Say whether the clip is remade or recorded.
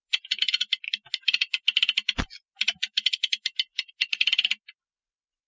recorded